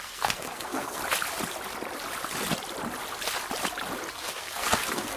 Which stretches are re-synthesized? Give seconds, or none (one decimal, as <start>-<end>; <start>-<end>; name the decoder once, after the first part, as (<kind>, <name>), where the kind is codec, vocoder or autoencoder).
0.0-1.0 (codec, SNAC); 4.1-5.2